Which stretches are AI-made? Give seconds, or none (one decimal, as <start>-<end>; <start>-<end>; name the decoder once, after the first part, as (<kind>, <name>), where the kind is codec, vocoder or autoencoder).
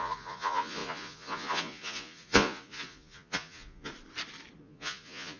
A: 0.0-3.9 (vocoder, Vocos); 4.6-5.4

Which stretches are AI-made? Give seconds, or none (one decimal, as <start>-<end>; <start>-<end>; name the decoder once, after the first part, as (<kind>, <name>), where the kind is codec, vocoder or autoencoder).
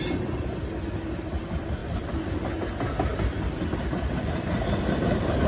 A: 1.8-2.5 (vocoder, BigVGAN v2); 3.1-4.5